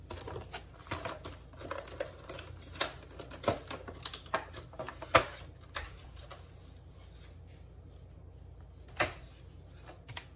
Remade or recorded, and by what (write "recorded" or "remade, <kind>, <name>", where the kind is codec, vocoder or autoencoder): recorded